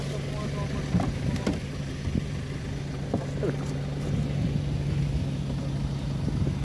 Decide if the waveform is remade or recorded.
recorded